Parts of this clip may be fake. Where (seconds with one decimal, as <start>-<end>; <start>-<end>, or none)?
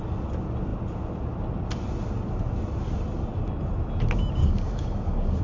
4.4-5.4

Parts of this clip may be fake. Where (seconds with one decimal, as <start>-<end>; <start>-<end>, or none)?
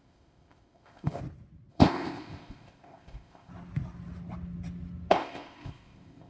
0.0-1.2; 1.7-3.5; 5.1-6.3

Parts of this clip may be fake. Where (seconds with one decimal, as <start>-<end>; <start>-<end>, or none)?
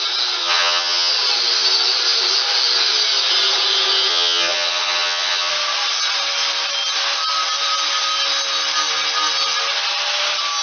0.4-1.1; 4.1-5.5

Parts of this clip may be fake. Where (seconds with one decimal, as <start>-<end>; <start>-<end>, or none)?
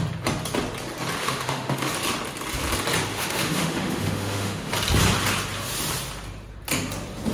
1.2-1.9; 3.1-4.7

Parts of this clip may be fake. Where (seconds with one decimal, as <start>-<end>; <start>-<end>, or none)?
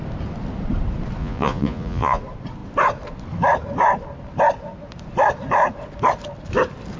1.2-2.2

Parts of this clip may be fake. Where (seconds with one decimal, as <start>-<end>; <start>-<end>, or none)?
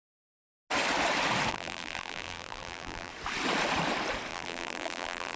1.5-3.1; 4.3-5.4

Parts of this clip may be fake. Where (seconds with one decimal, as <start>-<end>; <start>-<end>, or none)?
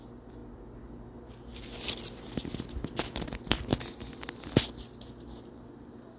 none